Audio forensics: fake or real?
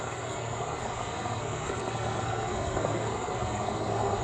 fake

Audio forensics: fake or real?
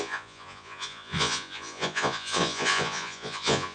fake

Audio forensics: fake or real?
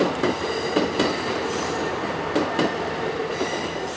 real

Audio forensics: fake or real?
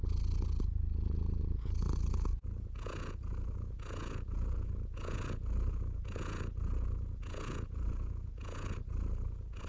fake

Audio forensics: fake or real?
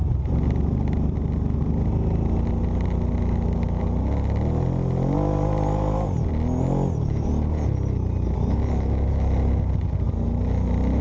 real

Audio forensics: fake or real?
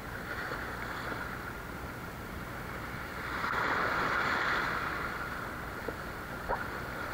real